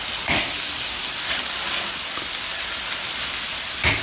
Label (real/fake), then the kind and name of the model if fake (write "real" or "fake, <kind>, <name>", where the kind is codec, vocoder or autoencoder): fake, vocoder, BigVGAN v2